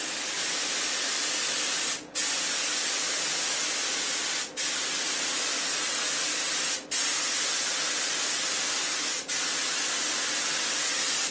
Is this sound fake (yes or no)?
no